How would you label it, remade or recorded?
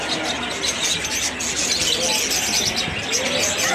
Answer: recorded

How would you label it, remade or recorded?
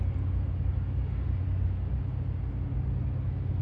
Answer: recorded